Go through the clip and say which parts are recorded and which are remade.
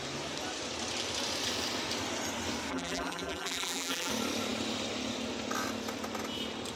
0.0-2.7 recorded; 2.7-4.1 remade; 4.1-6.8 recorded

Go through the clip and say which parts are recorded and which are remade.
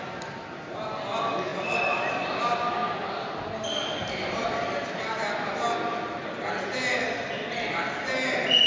0.0-8.7 recorded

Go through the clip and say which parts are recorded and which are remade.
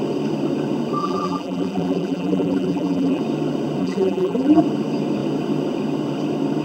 0.0-1.0 recorded; 1.0-3.2 remade; 3.2-3.8 recorded; 3.8-4.6 remade; 4.6-6.6 recorded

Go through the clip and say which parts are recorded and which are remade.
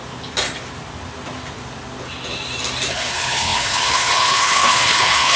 0.0-2.9 recorded; 2.9-5.4 remade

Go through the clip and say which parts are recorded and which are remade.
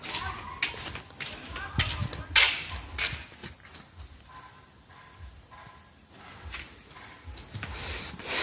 0.0-8.4 recorded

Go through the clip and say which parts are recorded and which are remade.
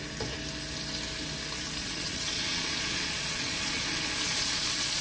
0.0-1.8 recorded; 1.8-5.0 remade